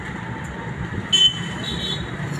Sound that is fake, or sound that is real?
real